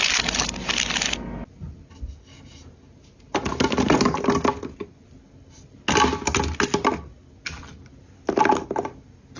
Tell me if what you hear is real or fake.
real